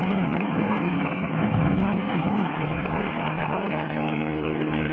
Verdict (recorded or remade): remade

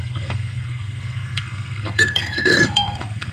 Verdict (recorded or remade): remade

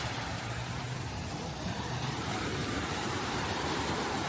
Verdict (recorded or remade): remade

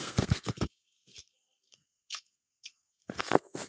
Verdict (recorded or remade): remade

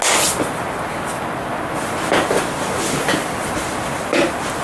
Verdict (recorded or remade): recorded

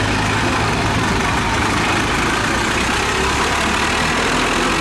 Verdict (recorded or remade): recorded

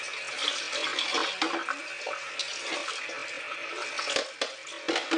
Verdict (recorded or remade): recorded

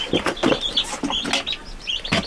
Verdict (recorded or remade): recorded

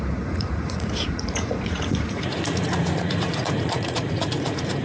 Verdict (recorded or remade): remade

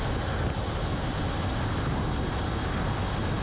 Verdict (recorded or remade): recorded